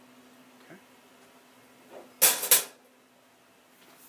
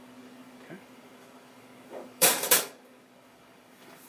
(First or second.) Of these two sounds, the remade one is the second